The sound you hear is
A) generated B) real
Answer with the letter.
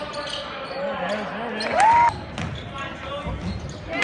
B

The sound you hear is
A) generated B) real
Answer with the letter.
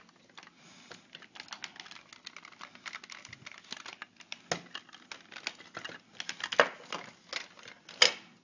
B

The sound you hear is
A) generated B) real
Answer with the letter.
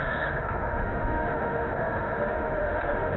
A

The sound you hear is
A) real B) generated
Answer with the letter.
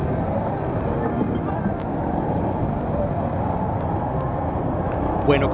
A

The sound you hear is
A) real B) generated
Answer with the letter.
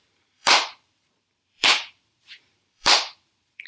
B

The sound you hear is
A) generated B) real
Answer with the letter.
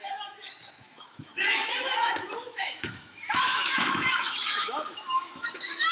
A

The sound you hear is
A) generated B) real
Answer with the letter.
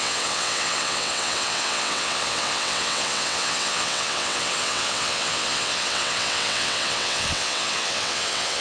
A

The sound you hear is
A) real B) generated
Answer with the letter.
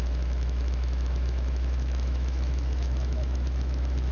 B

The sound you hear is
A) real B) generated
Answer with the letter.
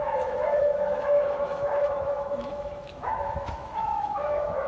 B